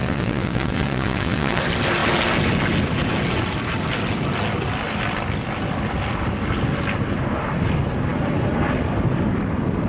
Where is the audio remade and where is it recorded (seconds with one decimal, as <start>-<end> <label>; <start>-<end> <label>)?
0.0-1.6 remade; 1.6-9.9 recorded